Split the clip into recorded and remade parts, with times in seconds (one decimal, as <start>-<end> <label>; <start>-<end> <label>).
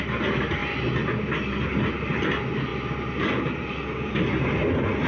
0.0-5.1 recorded